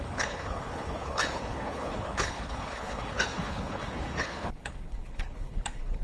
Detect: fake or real fake